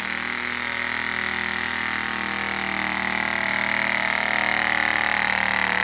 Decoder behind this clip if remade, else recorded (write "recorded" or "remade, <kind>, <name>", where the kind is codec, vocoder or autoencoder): recorded